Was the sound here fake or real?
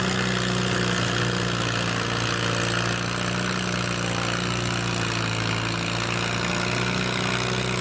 real